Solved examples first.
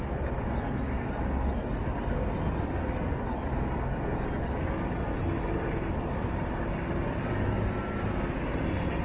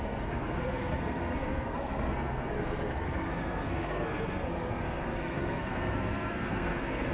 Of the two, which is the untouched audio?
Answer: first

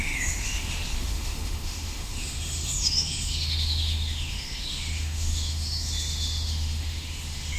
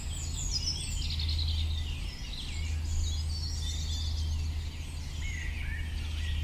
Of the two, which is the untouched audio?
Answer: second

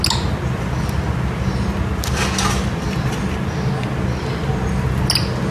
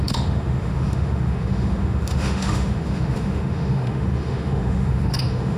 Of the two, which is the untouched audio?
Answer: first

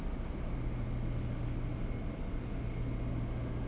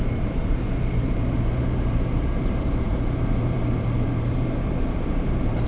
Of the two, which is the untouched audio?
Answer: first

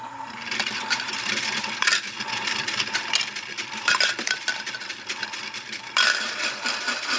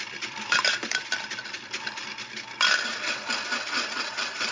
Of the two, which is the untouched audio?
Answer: second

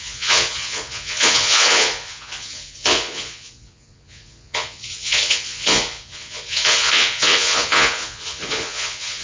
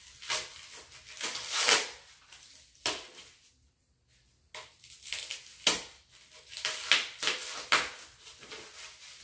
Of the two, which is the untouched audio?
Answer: second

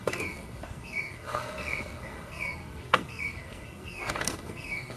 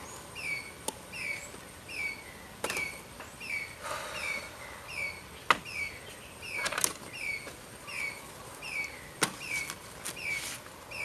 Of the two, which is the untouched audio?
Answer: second